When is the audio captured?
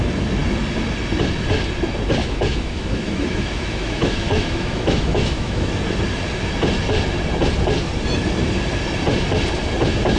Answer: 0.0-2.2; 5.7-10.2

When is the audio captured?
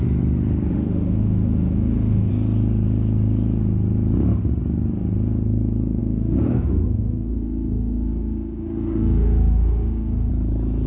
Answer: 0.0-0.7; 2.3-6.0; 10.3-10.9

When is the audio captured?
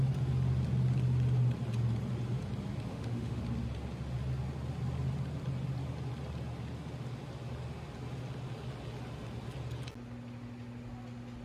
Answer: 0.0-2.9; 3.4-11.4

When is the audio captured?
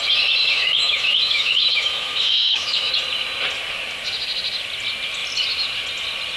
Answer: 0.0-0.4; 2.9-6.4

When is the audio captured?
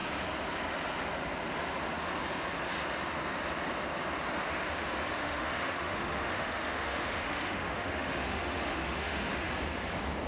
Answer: 0.0-5.2; 9.5-10.3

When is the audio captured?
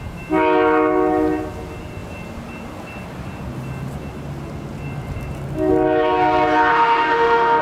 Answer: 0.0-6.7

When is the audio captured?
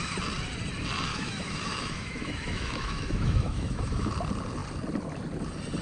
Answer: 0.0-1.1; 4.1-5.8